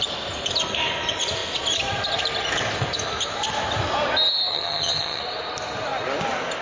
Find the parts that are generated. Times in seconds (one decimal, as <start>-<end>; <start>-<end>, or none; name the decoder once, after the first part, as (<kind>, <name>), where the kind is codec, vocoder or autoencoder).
4.5-5.2 (vocoder, HiFi-GAN)